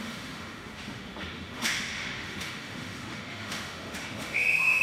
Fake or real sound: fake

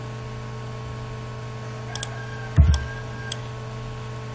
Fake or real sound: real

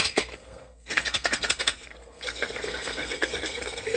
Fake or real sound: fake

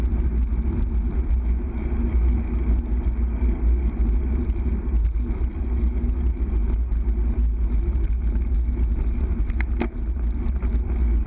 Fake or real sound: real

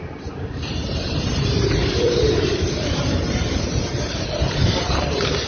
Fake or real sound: fake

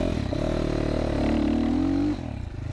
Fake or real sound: real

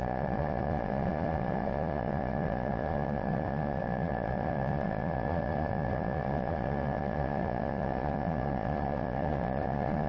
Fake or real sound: fake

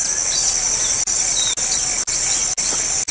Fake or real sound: real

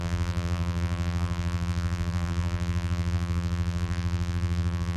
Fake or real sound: fake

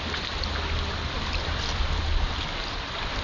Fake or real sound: real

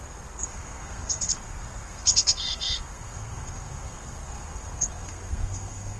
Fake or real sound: fake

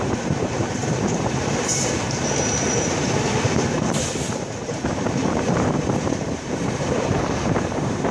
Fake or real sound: fake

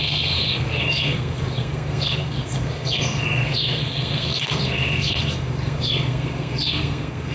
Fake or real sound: fake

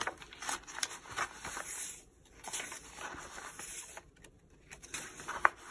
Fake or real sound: real